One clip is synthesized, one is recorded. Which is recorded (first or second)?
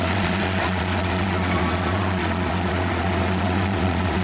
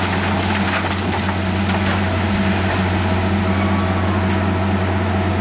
second